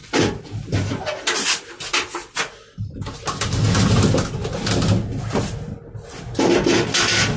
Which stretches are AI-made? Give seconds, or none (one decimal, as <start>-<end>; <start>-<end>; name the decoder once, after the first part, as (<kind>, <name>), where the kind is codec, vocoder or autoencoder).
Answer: 0.0-2.8 (vocoder, BigVGAN v2)